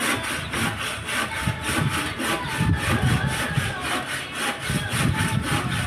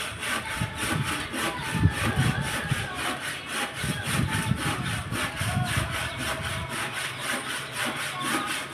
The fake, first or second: second